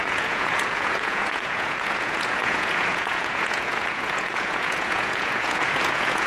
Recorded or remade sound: remade